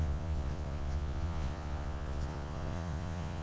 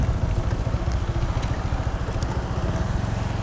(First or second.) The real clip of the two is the second